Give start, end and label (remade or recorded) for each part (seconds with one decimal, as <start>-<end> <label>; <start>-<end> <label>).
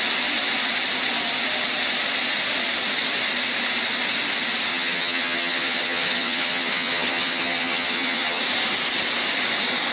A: 0.0-4.7 recorded; 4.7-8.4 remade; 8.4-9.9 recorded